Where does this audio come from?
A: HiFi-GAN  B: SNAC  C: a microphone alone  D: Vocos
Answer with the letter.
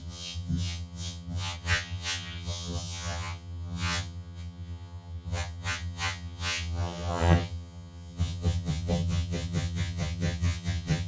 A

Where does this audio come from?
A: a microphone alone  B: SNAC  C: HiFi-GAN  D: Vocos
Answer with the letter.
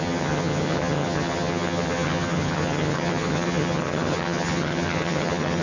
C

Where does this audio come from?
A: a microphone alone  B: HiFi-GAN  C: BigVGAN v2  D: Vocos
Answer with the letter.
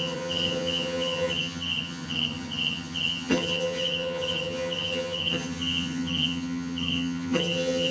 B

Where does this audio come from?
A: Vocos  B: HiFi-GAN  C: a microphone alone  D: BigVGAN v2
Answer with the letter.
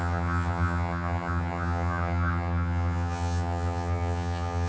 B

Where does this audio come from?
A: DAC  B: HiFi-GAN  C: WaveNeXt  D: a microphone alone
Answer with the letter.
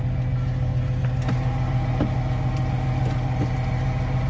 D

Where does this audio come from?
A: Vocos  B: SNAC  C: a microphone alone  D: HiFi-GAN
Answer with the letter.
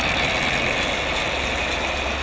C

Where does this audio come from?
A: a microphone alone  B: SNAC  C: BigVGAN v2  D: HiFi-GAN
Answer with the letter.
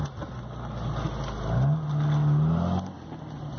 A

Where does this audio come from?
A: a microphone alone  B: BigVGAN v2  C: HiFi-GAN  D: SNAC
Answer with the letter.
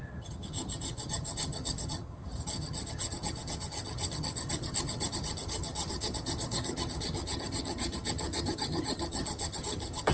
C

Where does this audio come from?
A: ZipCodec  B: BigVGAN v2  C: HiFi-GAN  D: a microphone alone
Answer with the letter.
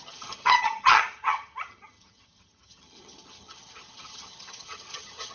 C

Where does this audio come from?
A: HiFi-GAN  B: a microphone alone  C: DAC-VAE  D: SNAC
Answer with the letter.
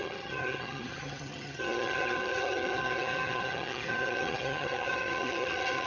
A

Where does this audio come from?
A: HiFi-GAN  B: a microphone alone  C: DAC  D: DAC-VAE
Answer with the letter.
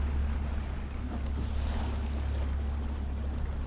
B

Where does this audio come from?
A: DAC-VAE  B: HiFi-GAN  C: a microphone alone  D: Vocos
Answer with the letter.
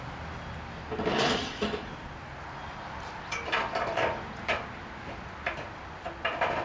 C